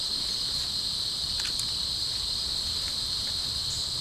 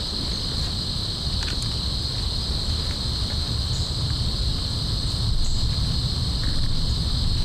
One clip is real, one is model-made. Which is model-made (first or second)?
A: first